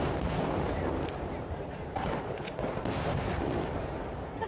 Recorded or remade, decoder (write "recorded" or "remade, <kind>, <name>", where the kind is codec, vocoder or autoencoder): remade, vocoder, BigVGAN v2